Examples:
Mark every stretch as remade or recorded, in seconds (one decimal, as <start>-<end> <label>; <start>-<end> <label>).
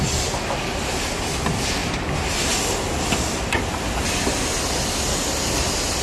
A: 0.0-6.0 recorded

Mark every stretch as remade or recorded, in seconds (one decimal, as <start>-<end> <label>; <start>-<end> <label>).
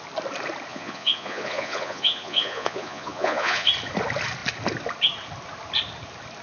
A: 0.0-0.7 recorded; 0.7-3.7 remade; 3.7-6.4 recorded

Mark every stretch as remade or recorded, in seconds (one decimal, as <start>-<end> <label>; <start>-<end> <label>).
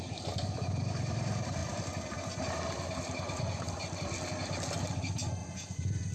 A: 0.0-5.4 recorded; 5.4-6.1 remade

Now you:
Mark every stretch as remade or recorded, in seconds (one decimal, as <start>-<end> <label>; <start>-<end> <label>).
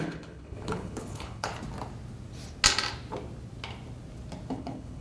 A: 0.0-1.5 remade; 1.5-4.5 recorded; 4.5-5.0 remade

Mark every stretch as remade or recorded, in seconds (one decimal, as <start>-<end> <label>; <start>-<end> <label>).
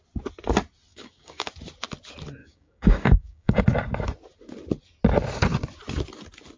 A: 0.0-0.9 recorded; 0.9-1.5 remade; 1.5-2.4 recorded; 2.4-3.6 remade; 3.6-6.6 recorded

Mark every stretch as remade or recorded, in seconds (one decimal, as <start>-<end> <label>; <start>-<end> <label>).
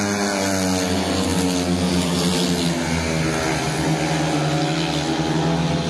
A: 0.0-5.9 recorded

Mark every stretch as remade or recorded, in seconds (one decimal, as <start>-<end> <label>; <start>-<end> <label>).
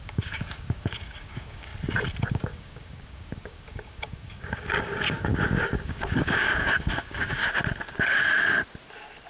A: 0.0-1.7 remade; 1.7-2.3 recorded; 2.3-7.4 remade; 7.4-9.3 recorded